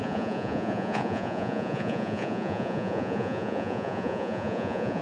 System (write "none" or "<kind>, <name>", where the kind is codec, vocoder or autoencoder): vocoder, Vocos